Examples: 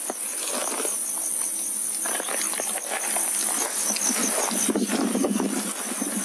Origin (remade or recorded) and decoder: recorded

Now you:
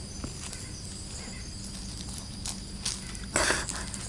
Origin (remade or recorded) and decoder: recorded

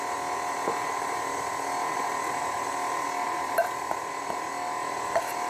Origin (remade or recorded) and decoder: recorded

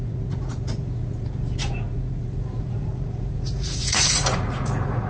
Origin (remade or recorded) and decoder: remade, vocoder, Vocos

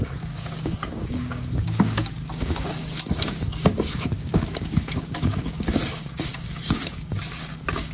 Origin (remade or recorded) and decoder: remade, codec, DAC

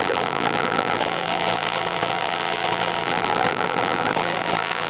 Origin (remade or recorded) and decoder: remade, vocoder, BigVGAN v2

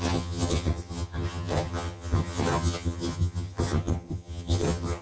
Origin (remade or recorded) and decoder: remade, vocoder, HiFi-GAN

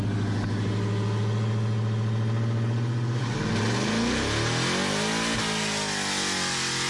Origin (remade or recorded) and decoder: recorded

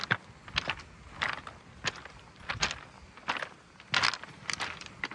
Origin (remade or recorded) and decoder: recorded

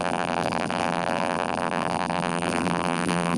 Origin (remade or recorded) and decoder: remade, vocoder, BigVGAN v2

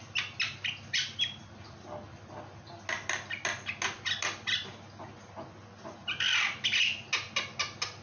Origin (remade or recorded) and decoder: recorded